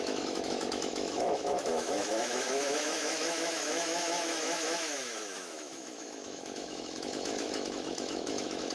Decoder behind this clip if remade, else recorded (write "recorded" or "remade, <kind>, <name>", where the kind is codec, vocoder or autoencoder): remade, autoencoder, DAC-VAE